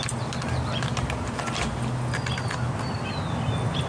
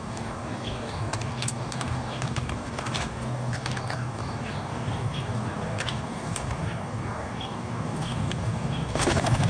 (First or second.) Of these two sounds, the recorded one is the first